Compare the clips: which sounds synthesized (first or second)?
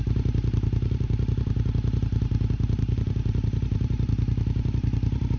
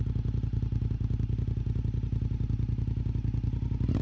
first